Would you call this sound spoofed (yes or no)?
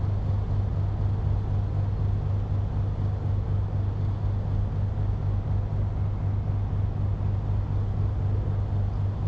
no